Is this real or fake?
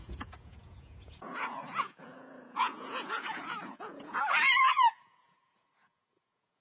fake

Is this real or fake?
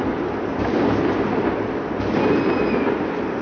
real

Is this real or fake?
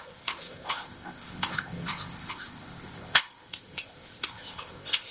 fake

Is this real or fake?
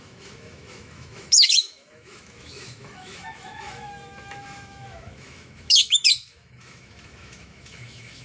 fake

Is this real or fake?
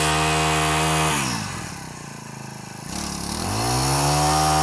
real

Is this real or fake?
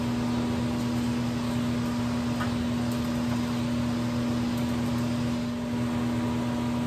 real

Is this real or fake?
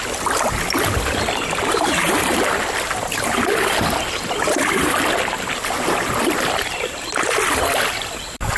real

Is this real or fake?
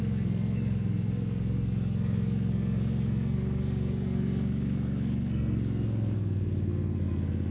fake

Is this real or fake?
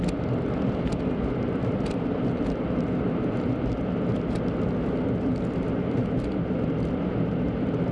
real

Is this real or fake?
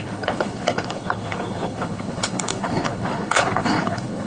fake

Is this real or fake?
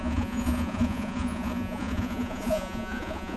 fake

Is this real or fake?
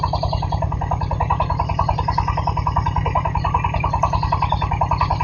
real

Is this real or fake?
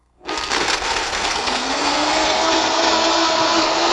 fake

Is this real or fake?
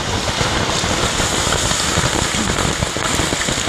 real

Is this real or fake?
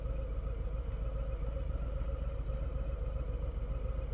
real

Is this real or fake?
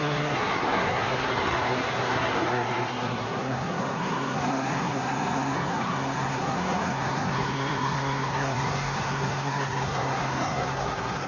fake